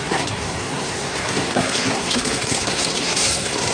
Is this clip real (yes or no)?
no